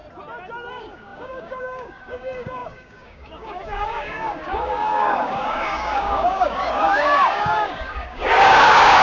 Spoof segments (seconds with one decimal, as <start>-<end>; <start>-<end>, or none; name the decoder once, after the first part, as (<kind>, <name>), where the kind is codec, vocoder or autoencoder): 0.7-9.0 (codec, DAC)